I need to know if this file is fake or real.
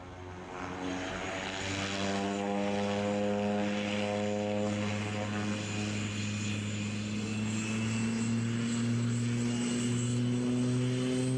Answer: real